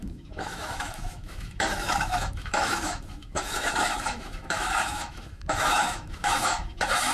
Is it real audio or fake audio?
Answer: fake